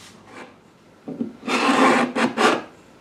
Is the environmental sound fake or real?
fake